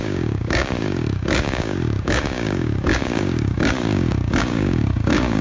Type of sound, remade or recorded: remade